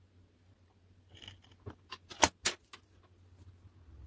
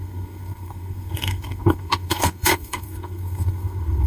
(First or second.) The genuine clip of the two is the first